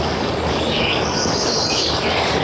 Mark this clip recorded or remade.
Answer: remade